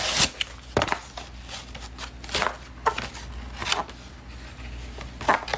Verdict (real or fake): real